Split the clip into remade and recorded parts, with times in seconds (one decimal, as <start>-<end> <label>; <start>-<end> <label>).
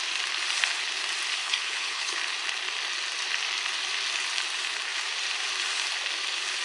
0.0-1.4 recorded; 1.4-2.2 remade; 2.2-6.6 recorded